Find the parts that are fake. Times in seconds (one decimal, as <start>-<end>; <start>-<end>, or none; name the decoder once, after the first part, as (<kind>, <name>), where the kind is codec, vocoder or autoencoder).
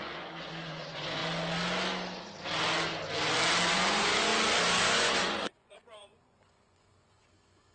0.0-1.2 (vocoder, Vocos); 3.7-4.3; 4.8-7.7